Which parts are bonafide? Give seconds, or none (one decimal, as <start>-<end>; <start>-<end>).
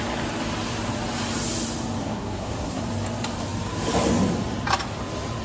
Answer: 0.0-2.0; 2.8-5.4